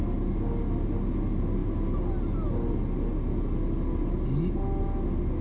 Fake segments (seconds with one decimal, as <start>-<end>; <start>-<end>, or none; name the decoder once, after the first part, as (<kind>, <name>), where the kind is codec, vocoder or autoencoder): none